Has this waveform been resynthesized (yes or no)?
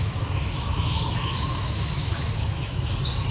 yes